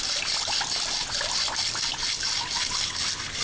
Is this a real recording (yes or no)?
yes